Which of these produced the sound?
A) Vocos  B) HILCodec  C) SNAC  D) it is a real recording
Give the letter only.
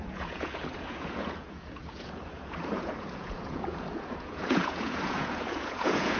A